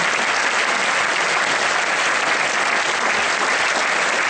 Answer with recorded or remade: recorded